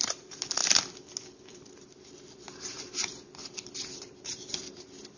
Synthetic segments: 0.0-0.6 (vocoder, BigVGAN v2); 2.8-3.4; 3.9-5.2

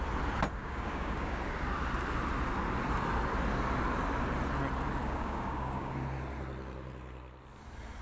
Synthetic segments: 0.6-1.4 (codec, DAC); 5.0-5.9

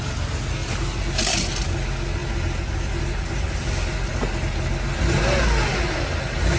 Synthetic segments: none

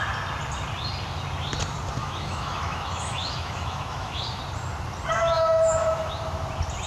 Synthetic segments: 2.0-4.4 (autoencoder, DAC-VAE); 5.2-6.1

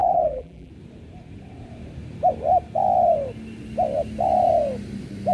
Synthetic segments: 0.0-0.7 (vocoder, BigVGAN v2)

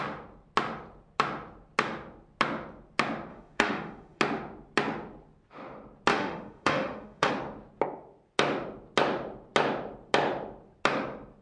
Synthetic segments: 3.3-4.2 (autoencoder, DAC-VAE); 6.1-7.3